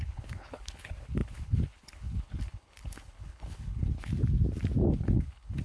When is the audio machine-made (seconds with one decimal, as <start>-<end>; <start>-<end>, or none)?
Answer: 0.0-4.1; 4.9-5.6